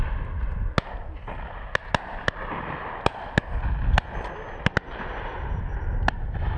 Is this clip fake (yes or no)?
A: no